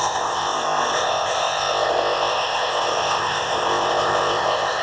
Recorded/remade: remade